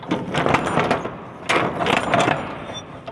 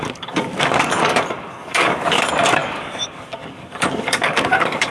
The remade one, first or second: second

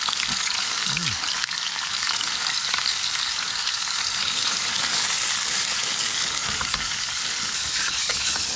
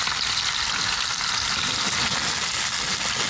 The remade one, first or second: first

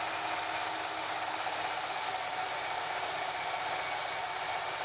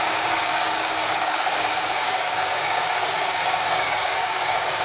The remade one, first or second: second